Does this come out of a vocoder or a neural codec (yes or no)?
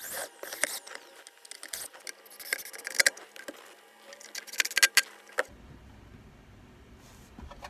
no